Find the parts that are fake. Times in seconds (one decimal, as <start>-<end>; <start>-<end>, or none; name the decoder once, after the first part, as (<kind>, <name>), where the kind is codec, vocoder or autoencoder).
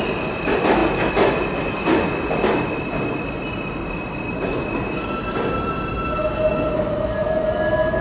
none